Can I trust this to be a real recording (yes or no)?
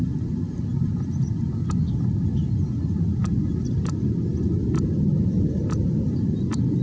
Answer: yes